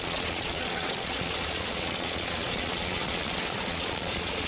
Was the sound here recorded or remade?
remade